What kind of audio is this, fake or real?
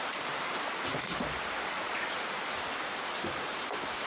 fake